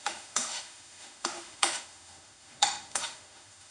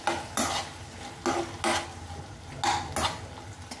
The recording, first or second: second